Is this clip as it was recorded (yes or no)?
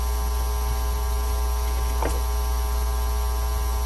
yes